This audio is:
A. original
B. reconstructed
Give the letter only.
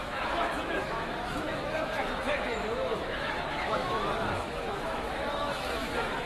B